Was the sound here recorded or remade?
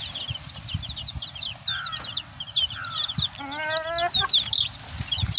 recorded